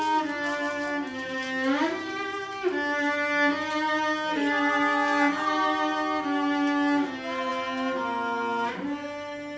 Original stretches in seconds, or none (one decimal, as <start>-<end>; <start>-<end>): 0.0-9.6